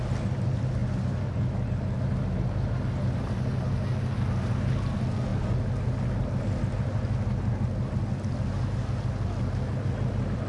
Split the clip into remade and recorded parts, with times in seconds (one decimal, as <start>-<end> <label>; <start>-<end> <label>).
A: 0.0-10.5 recorded